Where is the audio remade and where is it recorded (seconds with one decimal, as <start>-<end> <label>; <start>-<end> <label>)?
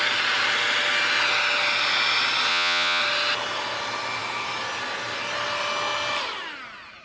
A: 0.0-2.5 recorded; 2.5-3.0 remade; 3.0-7.0 recorded